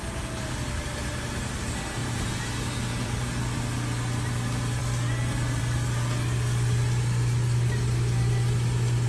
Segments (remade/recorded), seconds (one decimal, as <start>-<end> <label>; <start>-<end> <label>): 0.0-2.0 recorded; 2.0-3.4 remade; 3.4-9.1 recorded